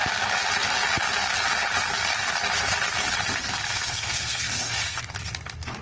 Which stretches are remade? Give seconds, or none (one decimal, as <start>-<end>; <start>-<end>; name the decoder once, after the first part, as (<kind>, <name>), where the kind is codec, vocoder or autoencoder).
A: 3.4-5.1 (codec, SNAC)